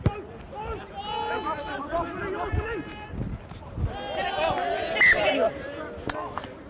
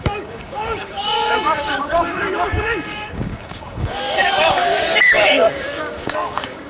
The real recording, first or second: first